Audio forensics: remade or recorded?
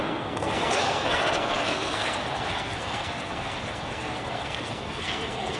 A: remade